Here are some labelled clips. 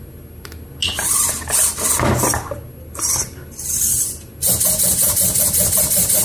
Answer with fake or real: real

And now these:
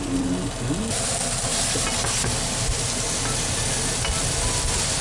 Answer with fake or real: real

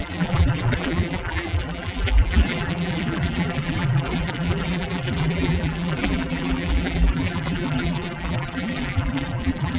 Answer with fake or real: fake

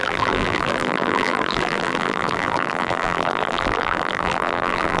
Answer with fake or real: fake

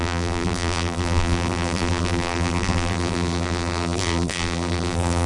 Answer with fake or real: fake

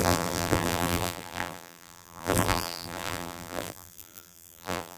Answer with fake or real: fake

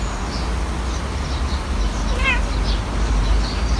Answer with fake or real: real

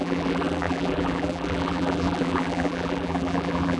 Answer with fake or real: fake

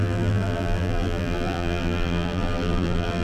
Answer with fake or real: fake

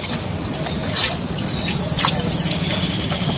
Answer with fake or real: fake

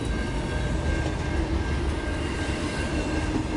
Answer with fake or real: real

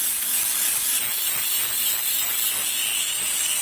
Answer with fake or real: real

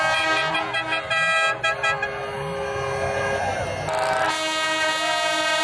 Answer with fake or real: real